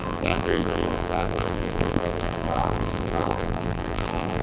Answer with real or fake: fake